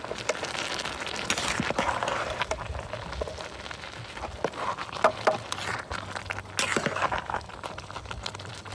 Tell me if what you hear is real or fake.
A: real